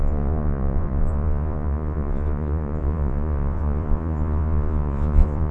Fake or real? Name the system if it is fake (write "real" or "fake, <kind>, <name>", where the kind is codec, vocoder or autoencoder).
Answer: fake, vocoder, Vocos